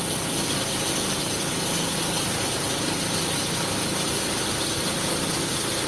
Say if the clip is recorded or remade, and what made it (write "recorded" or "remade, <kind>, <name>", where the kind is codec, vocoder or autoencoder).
recorded